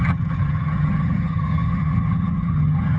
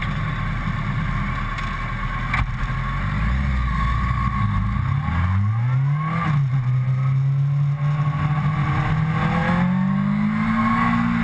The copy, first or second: first